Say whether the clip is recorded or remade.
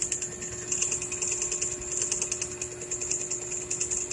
recorded